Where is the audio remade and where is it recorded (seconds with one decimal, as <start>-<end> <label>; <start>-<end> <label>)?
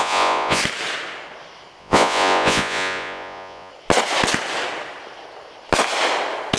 0.0-0.6 remade; 0.6-1.8 recorded; 1.8-3.7 remade; 3.7-6.6 recorded